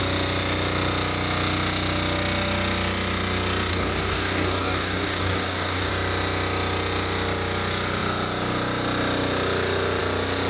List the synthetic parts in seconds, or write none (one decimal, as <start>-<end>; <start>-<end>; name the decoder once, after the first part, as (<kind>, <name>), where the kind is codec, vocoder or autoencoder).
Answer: 3.7-5.9 (codec, DAC)